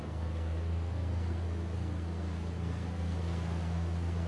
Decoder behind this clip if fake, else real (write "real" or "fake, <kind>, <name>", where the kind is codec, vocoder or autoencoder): fake, codec, SNAC